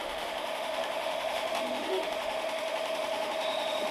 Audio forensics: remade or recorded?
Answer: remade